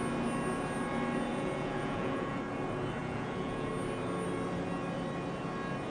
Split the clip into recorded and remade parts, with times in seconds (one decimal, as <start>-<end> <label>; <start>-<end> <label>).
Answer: 0.0-1.3 recorded; 1.3-2.4 remade; 2.4-3.0 recorded; 3.0-3.7 remade; 3.7-5.9 recorded